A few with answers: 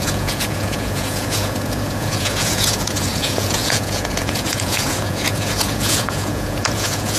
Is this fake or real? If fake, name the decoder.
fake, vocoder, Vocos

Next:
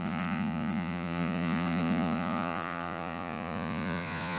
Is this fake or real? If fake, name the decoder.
fake, vocoder, Vocos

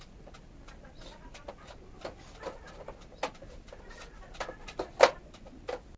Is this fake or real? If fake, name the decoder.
real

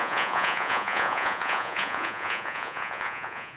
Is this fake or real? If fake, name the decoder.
fake, vocoder, Vocos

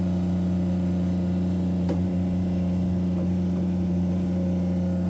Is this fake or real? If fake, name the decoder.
real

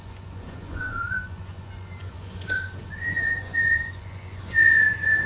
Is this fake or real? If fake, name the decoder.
fake, vocoder, Vocos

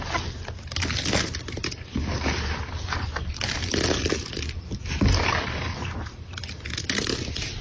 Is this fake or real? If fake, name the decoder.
real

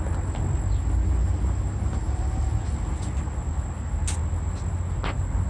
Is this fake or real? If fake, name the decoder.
real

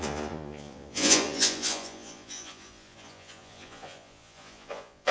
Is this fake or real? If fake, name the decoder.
fake, vocoder, Vocos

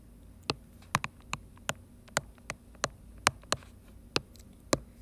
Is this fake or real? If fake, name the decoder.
real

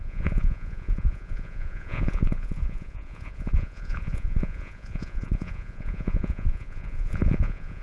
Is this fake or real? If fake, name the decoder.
fake, vocoder, Vocos